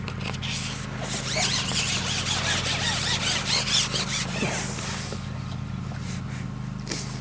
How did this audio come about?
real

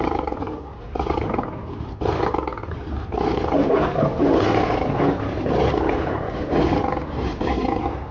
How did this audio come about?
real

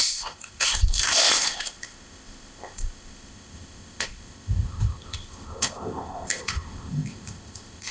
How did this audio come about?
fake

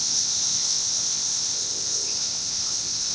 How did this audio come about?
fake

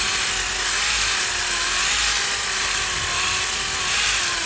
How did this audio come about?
real